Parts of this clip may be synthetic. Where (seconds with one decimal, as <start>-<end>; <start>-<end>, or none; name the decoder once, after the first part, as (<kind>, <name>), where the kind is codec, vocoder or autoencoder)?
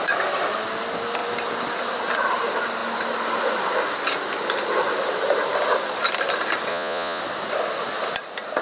6.7-7.2 (vocoder, Vocos)